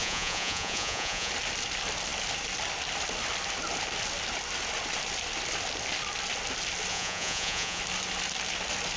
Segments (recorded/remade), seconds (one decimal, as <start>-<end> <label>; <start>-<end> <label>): 0.0-1.3 remade; 1.3-6.9 recorded; 6.9-7.8 remade; 7.8-9.0 recorded